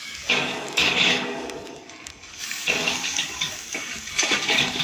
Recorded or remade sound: remade